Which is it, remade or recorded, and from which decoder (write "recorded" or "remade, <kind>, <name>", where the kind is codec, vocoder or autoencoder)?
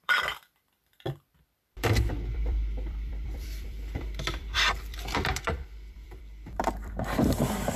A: remade, vocoder, BigVGAN v2